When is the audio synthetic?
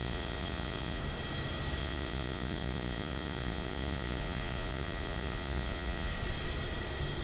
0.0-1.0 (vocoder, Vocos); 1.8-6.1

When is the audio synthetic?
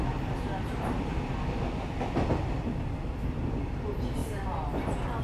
none